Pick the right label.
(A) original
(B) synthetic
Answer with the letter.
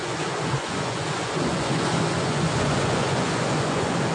B